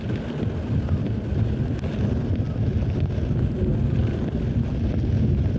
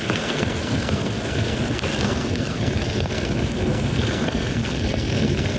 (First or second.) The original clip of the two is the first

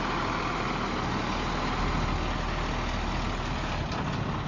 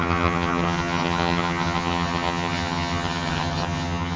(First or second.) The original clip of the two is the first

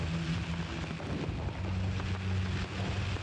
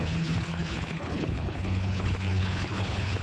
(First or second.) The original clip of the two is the first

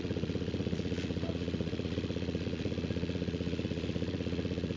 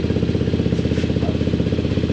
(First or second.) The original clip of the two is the second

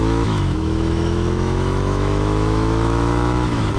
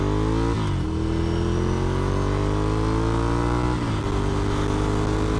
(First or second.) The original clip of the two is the second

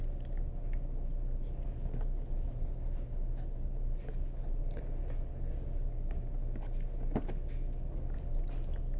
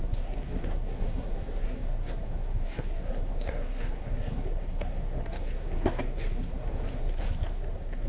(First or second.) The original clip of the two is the first